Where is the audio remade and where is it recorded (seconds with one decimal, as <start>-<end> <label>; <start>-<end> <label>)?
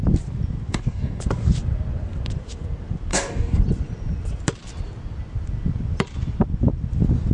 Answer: 0.0-0.7 recorded; 0.7-1.2 remade; 1.2-3.1 recorded; 3.1-3.6 remade; 3.6-7.3 recorded